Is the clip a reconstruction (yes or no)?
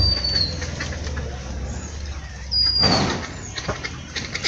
no